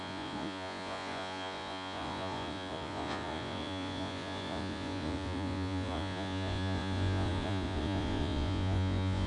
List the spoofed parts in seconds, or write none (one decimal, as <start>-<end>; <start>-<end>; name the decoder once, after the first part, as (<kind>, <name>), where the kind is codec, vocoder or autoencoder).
0.0-9.3 (vocoder, Vocos)